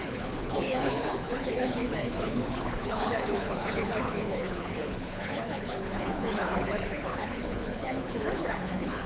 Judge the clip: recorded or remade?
remade